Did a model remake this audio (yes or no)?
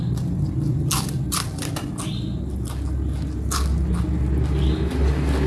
no